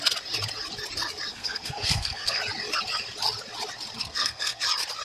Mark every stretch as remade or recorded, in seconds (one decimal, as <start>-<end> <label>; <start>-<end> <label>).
0.0-1.3 recorded; 1.3-2.4 remade; 2.4-4.0 recorded; 4.0-4.6 remade; 4.6-5.0 recorded